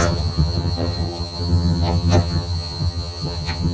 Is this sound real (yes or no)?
no